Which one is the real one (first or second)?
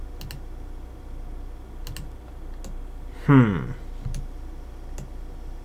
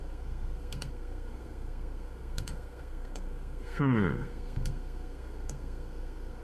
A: first